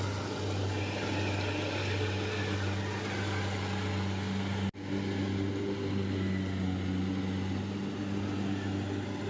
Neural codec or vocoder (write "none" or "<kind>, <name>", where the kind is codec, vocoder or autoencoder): none